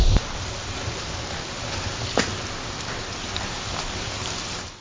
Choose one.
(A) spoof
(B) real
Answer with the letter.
B